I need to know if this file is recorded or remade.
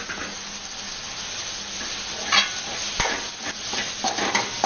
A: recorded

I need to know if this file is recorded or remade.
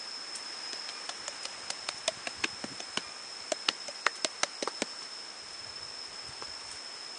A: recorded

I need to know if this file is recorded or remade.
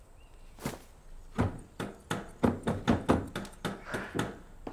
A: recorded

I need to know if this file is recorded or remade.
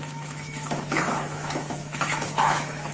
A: remade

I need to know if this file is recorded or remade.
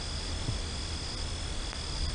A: recorded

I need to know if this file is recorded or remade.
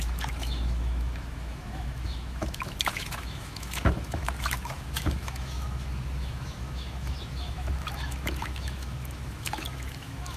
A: remade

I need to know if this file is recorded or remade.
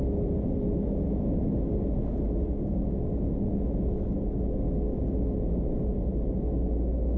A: recorded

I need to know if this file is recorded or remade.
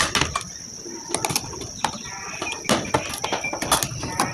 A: recorded